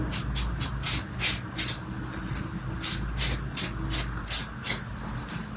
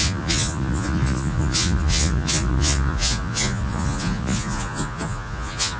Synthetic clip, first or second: second